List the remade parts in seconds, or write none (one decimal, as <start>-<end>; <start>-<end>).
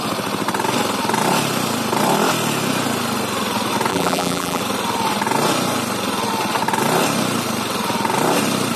3.9-4.6